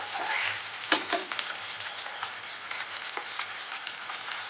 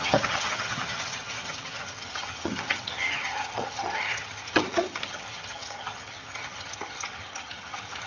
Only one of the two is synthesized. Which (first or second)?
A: second